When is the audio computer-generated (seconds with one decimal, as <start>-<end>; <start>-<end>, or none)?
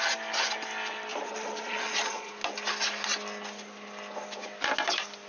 1.1-2.3